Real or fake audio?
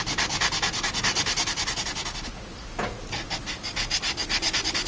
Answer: real